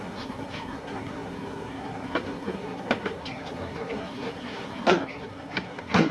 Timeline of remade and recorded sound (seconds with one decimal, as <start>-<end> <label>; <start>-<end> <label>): 0.0-6.1 remade